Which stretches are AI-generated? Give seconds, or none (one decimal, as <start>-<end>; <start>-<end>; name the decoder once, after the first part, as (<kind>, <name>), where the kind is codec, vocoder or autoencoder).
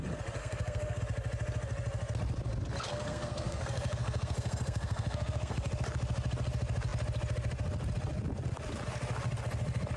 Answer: 0.4-1.0 (codec, SNAC); 2.9-5.7